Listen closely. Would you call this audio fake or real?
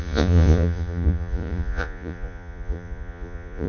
fake